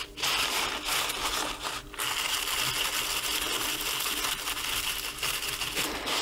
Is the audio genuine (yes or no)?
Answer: yes